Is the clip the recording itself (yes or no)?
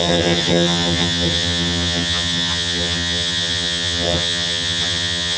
no